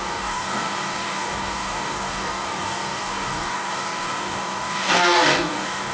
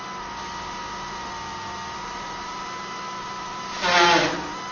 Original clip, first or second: second